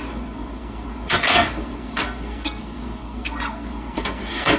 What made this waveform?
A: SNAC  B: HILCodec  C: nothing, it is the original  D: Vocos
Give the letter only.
A